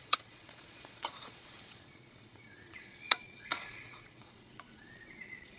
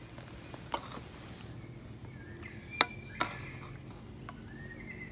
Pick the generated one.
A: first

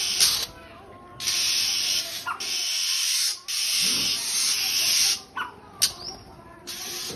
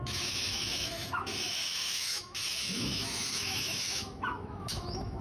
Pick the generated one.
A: second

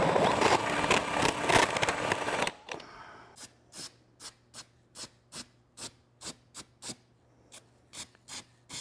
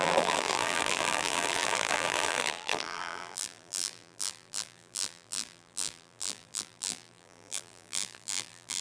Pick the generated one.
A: second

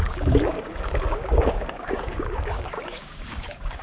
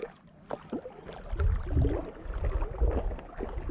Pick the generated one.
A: first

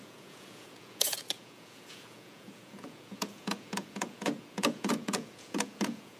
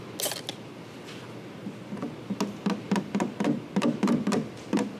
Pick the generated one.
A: first